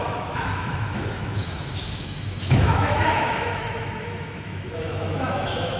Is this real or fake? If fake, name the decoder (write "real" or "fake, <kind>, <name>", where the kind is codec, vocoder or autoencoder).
fake, autoencoder, DAC-VAE